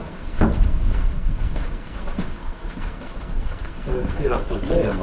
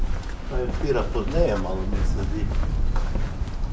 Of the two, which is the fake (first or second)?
first